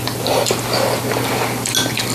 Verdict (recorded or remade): recorded